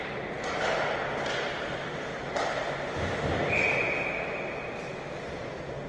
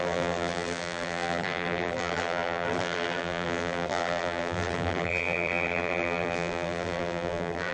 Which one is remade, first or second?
second